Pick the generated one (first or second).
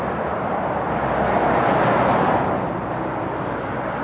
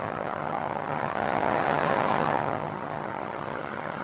second